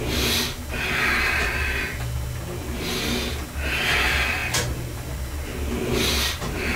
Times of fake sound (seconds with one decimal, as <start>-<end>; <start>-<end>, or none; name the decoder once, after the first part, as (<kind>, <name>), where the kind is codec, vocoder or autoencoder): none